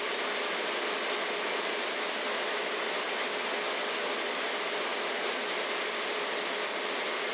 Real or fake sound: real